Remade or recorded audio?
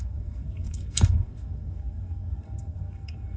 remade